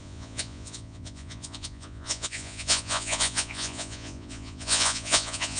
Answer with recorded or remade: remade